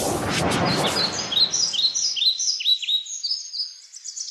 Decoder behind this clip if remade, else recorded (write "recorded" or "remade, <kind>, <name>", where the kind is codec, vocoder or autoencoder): recorded